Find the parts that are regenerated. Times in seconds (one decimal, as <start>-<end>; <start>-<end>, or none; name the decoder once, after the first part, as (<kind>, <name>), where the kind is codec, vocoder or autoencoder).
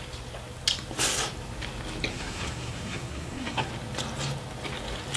2.1-3.7 (codec, SNAC)